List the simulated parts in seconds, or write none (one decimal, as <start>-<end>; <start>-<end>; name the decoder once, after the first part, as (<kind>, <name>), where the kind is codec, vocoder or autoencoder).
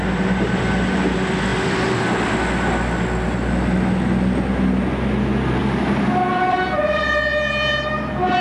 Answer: 1.5-2.0 (vocoder, BigVGAN v2); 5.6-7.0